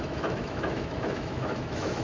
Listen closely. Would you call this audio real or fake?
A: fake